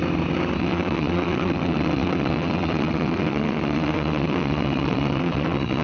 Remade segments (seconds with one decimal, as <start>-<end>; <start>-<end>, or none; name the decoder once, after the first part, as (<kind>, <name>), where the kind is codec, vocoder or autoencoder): 0.6-5.8 (vocoder, WaveNeXt)